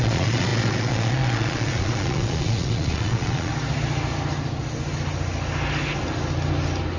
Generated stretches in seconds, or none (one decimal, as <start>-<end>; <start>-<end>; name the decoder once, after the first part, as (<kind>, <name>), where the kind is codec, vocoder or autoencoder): 0.0-3.5 (vocoder, Vocos)